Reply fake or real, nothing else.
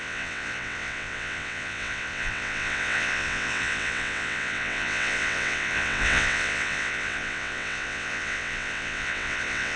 fake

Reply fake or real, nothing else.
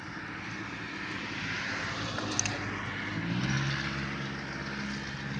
real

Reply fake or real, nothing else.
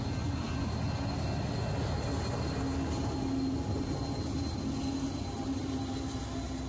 real